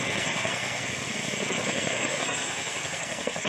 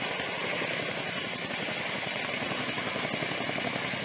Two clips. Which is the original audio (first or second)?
second